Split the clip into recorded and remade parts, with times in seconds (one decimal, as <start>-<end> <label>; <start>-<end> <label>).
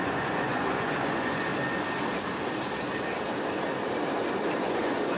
0.0-1.5 remade; 1.5-4.6 recorded; 4.6-5.2 remade